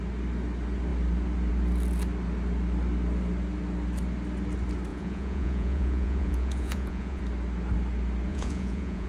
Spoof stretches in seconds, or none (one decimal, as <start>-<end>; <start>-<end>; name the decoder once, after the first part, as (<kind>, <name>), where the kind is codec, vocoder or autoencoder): 4.9-7.2 (vocoder, Vocos); 8.3-9.1